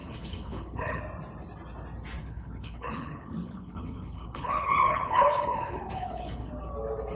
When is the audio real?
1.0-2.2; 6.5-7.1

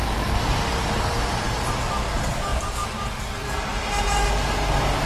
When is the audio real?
0.0-0.7; 1.6-2.5; 3.2-3.7; 4.3-5.1

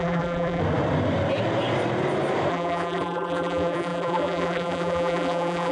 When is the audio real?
0.6-2.5

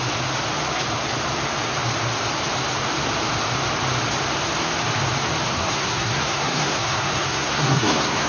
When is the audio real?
0.0-5.5